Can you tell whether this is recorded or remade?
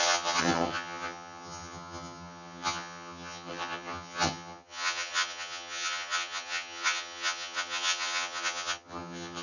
remade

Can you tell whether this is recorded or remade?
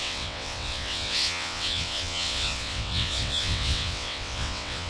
remade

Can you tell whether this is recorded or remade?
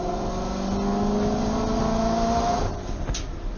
recorded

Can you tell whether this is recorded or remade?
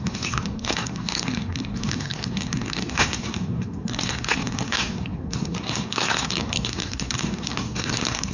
remade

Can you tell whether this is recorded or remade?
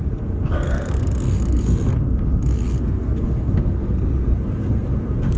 remade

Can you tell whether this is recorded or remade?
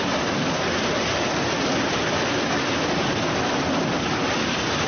recorded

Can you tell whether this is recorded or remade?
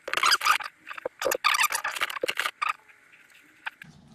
recorded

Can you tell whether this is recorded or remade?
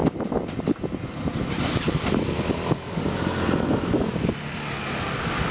recorded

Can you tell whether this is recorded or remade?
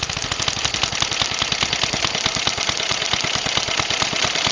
recorded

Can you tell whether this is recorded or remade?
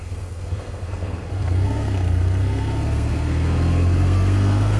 remade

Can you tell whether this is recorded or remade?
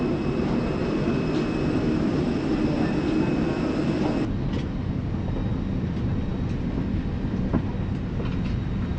recorded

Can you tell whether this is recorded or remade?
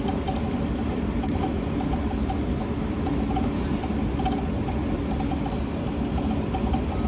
recorded